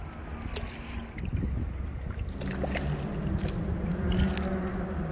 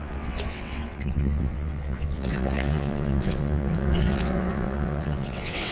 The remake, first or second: second